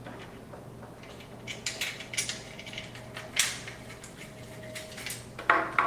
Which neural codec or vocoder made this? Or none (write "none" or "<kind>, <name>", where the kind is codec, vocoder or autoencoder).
none